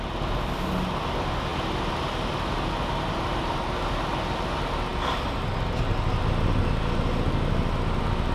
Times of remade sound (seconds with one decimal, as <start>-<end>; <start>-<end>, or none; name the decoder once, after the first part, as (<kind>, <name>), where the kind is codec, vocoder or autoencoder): none